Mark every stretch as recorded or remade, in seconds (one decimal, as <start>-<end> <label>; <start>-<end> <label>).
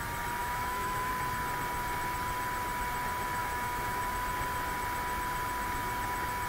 0.0-0.4 recorded; 0.4-1.1 remade; 1.1-3.4 recorded; 3.4-4.0 remade; 4.0-6.5 recorded